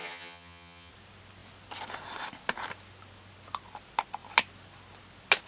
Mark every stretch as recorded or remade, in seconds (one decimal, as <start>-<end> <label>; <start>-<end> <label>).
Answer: 0.0-0.9 remade; 0.9-5.5 recorded